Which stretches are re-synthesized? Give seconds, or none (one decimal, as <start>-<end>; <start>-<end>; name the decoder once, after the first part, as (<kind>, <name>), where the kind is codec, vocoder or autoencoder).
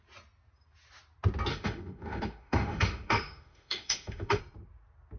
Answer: 1.5-4.4 (autoencoder, DAC-VAE)